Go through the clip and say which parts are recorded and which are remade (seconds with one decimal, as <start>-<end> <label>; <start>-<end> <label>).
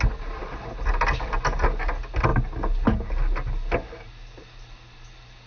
0.0-5.5 recorded